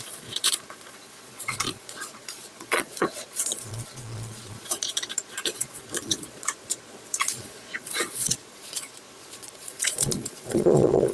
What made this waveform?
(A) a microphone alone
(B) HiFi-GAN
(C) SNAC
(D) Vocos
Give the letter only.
D